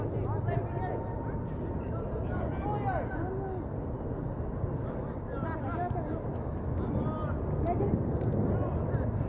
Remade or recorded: recorded